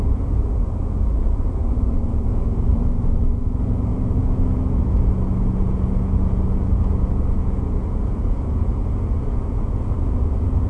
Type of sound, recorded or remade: remade